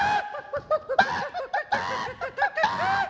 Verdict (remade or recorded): recorded